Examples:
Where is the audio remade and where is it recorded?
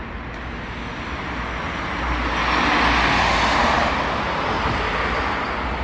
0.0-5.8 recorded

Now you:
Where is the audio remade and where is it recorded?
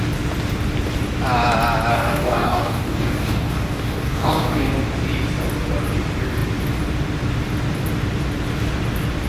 0.0-1.9 recorded; 1.9-4.7 remade; 4.7-9.3 recorded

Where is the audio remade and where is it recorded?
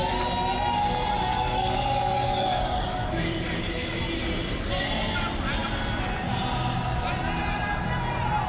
0.0-1.3 recorded; 1.3-4.0 remade; 4.0-8.5 recorded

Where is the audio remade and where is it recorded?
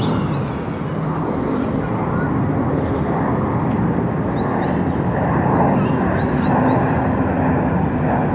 0.0-8.3 recorded